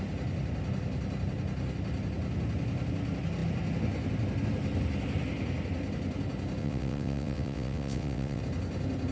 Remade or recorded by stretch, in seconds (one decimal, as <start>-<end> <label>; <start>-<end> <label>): 0.0-6.6 recorded; 6.6-8.4 remade; 8.4-9.1 recorded